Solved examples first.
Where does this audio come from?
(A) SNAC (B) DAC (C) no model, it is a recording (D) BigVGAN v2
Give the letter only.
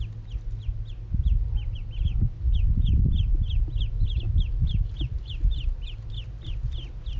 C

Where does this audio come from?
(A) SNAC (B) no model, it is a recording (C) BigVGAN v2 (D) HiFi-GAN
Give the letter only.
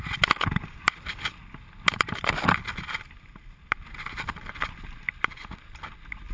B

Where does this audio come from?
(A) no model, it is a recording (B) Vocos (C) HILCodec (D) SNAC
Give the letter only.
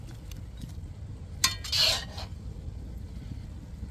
A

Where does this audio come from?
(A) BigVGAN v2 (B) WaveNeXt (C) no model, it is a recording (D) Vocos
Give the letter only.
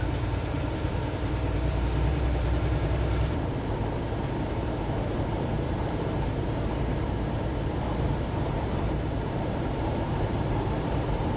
A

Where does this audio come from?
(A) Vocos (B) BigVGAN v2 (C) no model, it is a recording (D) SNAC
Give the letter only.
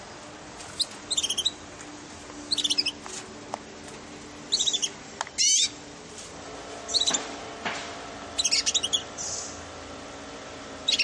C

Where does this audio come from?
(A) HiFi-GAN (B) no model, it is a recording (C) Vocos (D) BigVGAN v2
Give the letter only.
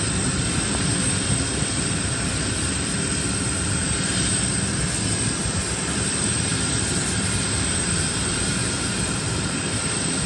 D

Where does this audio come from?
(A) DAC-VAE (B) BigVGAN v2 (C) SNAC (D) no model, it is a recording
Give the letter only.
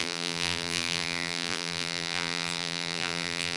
B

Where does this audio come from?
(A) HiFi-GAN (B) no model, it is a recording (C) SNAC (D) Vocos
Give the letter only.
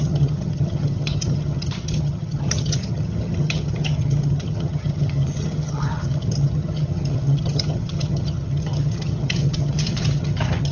A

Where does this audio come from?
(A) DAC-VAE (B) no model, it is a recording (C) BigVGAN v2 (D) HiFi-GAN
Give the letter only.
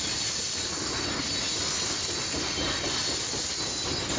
B